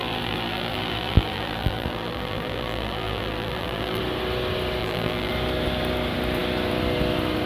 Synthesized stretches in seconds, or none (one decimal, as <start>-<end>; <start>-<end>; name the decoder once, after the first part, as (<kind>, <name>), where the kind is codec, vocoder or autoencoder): 0.0-4.0 (vocoder, BigVGAN v2); 4.8-5.3